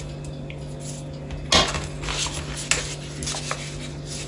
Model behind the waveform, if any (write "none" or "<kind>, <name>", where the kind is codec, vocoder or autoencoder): none